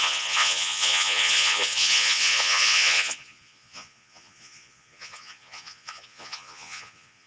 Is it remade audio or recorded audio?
remade